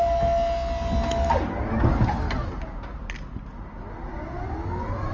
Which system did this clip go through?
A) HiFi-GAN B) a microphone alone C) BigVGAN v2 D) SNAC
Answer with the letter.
B